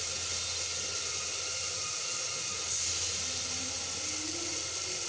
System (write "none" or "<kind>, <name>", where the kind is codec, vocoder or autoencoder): none